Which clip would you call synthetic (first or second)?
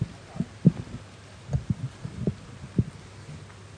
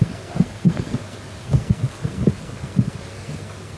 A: second